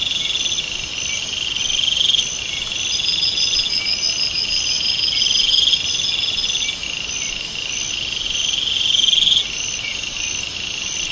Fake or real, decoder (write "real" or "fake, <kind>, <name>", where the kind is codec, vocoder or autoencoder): real